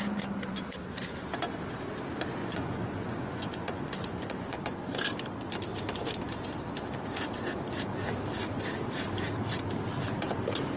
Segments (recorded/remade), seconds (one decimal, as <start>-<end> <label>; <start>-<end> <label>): 0.0-2.4 recorded; 2.4-4.6 remade; 4.6-10.8 recorded